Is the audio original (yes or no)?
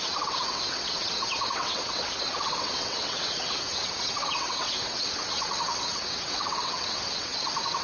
no